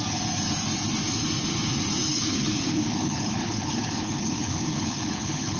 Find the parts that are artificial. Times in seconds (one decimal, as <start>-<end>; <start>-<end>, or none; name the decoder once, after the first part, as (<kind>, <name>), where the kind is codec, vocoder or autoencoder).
2.1-5.6 (codec, HILCodec)